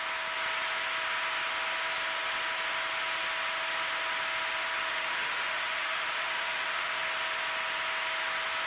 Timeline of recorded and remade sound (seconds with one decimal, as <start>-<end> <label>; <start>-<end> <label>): 0.0-4.9 recorded; 4.9-7.0 remade; 7.0-8.7 recorded